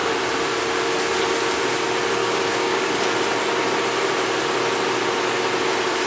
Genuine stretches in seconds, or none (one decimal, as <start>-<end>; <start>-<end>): 0.0-2.2; 2.9-6.1